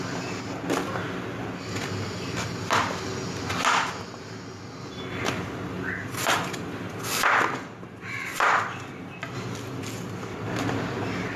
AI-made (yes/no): no